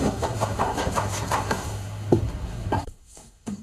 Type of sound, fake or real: fake